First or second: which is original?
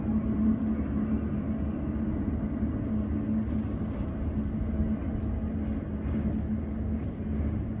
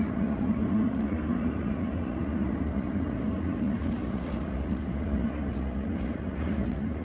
first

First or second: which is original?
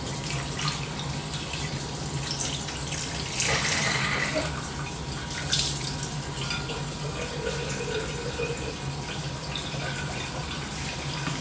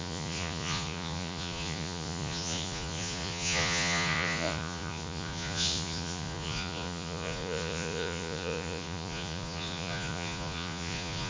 first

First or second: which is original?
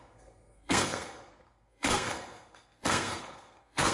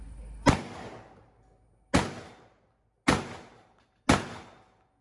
second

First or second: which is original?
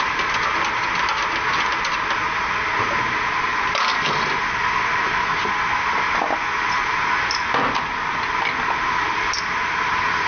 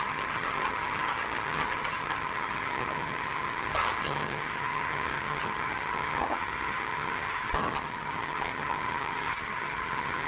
first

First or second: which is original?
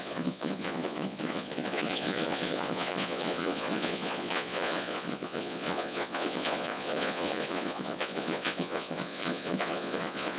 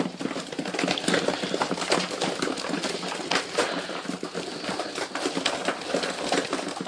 second